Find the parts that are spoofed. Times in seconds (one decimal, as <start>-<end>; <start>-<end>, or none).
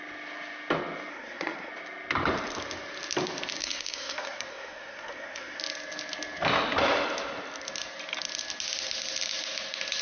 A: 1.1-1.7; 3.6-5.6